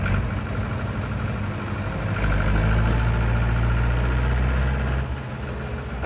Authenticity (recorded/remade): recorded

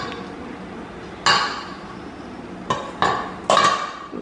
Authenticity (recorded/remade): recorded